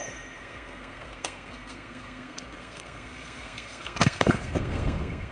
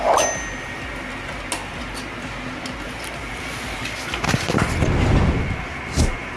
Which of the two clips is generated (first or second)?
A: first